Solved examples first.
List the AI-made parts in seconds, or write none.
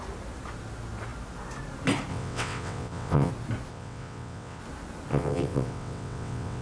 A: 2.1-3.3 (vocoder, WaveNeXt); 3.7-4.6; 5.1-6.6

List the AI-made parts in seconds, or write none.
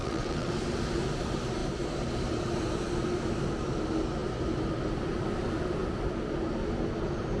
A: 0.0-0.5 (vocoder, WaveNeXt)